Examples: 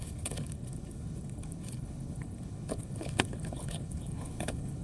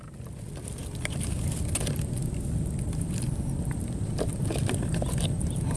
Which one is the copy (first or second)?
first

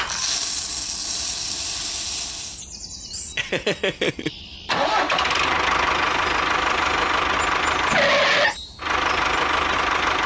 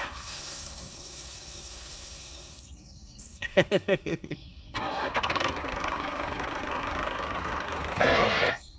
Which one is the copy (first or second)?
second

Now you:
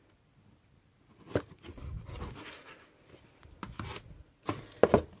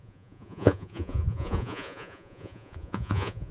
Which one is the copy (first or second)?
second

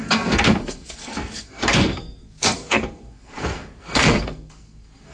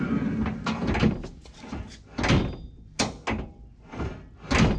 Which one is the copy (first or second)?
first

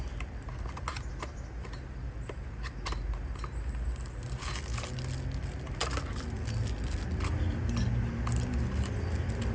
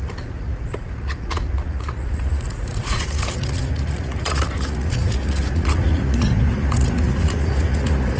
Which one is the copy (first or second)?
second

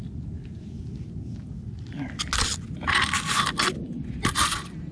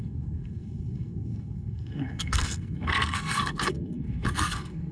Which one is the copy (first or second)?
second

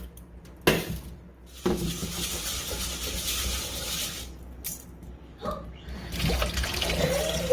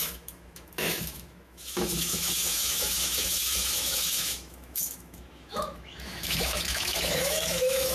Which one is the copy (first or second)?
second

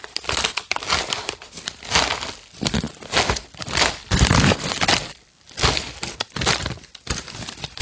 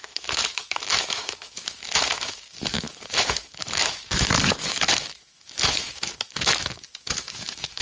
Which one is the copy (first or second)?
second